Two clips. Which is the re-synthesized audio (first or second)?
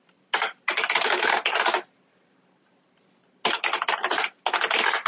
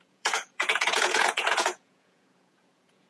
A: second